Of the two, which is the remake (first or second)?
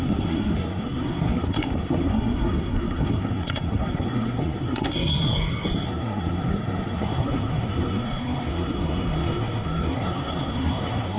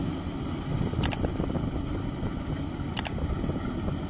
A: first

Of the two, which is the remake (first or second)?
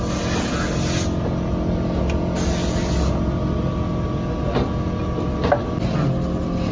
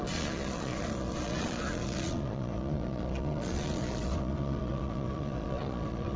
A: second